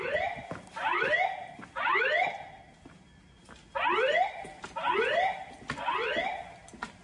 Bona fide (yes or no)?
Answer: yes